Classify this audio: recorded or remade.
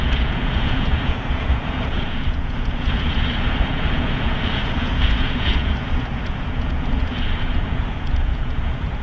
remade